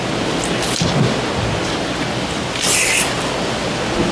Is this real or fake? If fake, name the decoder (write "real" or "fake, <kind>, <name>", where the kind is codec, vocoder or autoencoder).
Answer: real